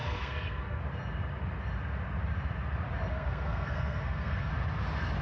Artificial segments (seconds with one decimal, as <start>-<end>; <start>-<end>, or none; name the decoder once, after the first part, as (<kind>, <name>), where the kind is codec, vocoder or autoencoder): 0.0-0.8 (codec, SNAC); 3.1-4.5